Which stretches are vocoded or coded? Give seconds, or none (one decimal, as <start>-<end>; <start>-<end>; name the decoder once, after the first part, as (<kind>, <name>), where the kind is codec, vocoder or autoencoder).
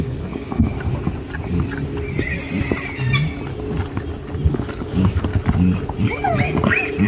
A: 0.0-0.7 (codec, DAC); 4.5-5.3